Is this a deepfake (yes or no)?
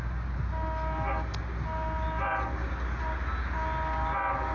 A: no